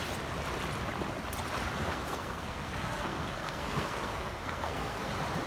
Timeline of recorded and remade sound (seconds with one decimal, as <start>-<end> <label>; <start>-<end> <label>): 0.0-1.8 recorded; 1.8-5.1 remade; 5.1-5.5 recorded